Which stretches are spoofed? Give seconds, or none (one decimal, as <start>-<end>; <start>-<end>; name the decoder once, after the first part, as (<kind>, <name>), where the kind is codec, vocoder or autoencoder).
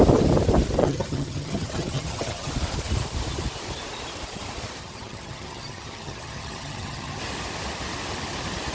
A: 0.8-2.5 (vocoder, HiFi-GAN); 4.8-7.2